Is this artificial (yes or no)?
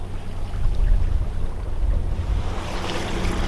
no